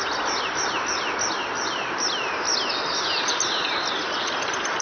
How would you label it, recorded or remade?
recorded